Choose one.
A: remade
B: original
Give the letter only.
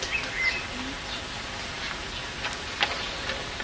B